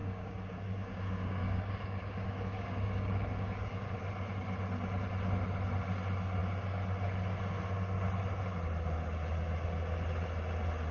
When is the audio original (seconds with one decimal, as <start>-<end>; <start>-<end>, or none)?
4.0-10.9